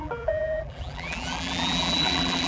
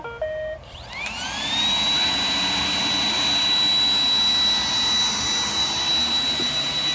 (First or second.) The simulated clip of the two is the first